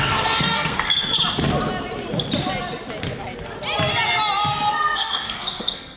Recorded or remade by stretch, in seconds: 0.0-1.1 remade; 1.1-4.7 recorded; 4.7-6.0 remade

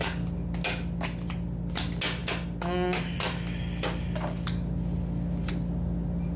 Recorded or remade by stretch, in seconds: 0.0-6.4 recorded

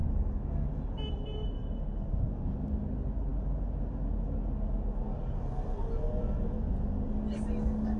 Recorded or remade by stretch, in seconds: 0.0-8.0 recorded

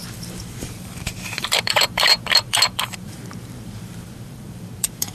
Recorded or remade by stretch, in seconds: 0.0-5.1 remade

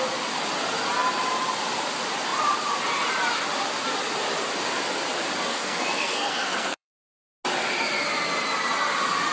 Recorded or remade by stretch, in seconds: 0.0-5.5 recorded; 5.5-7.1 remade; 7.1-9.3 recorded

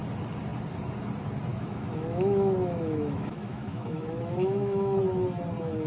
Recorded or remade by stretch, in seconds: 0.0-1.5 recorded; 1.5-5.0 remade; 5.0-5.9 recorded